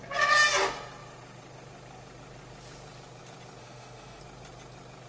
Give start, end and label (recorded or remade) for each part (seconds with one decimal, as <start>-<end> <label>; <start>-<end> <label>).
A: 0.0-3.6 recorded; 3.6-4.2 remade; 4.2-5.1 recorded